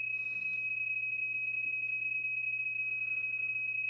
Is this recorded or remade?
recorded